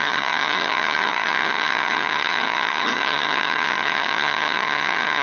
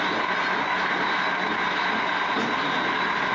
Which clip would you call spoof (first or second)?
first